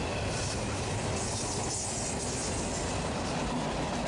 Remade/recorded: recorded